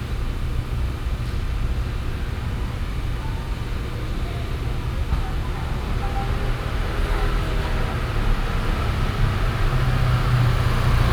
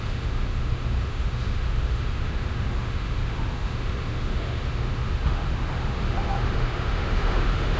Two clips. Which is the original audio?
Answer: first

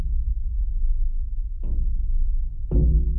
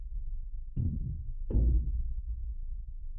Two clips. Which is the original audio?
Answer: first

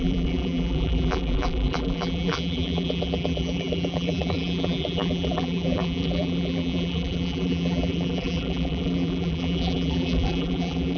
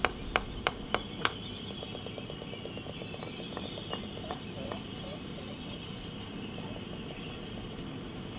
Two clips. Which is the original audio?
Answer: second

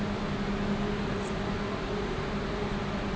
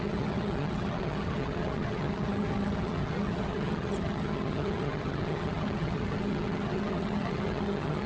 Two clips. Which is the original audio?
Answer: first